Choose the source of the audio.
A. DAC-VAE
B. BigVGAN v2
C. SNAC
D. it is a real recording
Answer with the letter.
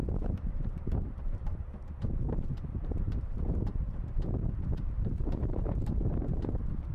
B